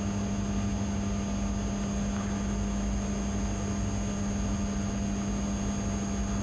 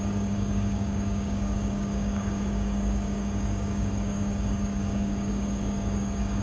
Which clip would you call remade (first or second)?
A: second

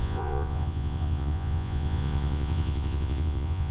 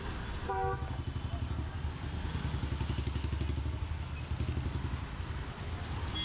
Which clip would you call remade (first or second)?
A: first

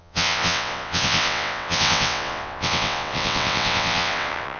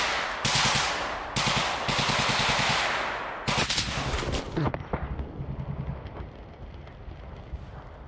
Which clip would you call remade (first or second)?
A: first